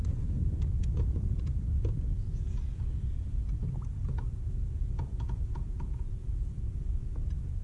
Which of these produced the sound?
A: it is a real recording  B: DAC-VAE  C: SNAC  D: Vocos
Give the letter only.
D